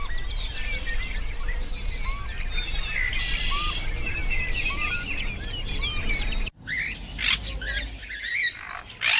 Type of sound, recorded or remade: recorded